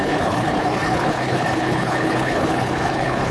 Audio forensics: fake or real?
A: fake